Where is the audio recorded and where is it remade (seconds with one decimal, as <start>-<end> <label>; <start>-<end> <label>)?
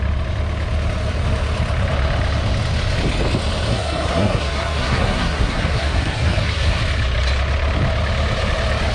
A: 0.0-3.7 recorded; 3.7-6.8 remade; 6.8-8.9 recorded